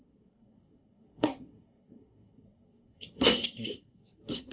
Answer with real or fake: fake